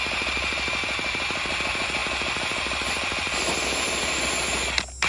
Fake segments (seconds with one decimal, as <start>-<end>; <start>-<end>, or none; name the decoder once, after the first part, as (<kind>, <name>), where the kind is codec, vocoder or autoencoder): none